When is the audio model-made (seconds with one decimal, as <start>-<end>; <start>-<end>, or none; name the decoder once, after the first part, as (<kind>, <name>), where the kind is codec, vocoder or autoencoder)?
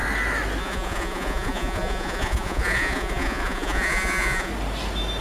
0.6-4.5 (vocoder, Vocos)